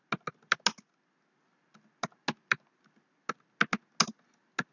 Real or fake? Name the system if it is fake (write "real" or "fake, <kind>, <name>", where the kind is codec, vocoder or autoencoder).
real